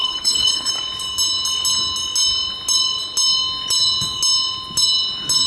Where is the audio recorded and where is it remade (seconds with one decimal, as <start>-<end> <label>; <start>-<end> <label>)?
0.0-0.7 remade; 0.7-5.5 recorded